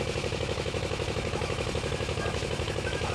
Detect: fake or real fake